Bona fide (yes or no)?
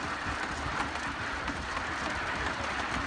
yes